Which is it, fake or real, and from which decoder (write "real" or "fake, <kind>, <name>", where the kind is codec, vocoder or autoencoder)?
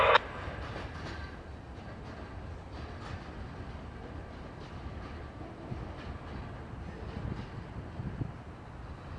real